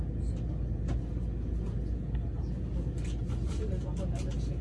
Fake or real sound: real